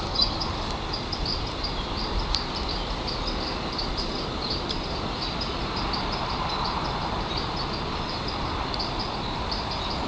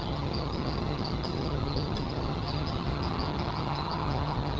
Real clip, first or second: first